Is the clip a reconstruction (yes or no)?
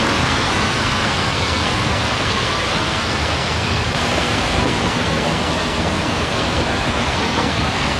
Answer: yes